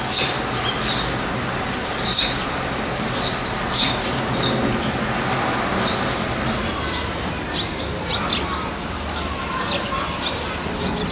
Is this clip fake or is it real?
real